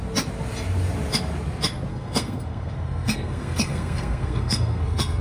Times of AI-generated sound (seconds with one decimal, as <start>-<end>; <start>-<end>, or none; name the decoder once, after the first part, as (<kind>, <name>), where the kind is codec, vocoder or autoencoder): 1.9-5.2 (codec, SNAC)